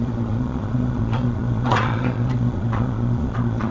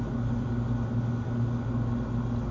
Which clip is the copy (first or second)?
first